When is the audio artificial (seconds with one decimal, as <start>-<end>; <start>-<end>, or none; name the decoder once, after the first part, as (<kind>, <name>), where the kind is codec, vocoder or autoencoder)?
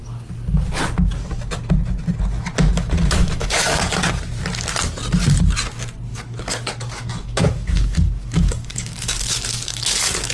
3.2-4.1 (codec, DAC); 6.1-10.3